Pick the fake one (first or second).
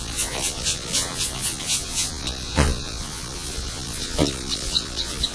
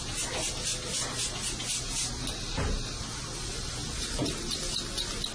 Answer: first